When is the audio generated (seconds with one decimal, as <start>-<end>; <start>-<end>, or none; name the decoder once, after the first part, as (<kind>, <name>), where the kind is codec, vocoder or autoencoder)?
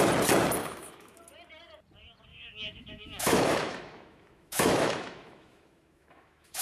0.6-1.2 (autoencoder, DAC-VAE); 2.3-6.6